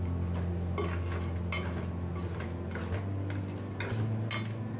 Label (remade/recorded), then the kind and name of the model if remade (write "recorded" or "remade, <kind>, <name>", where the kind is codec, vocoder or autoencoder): recorded